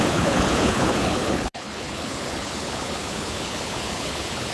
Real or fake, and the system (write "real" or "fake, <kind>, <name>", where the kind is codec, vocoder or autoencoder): fake, codec, HILCodec